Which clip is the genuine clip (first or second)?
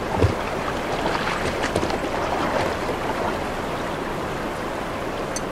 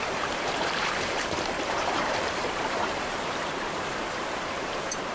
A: first